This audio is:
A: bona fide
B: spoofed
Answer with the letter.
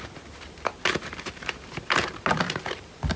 A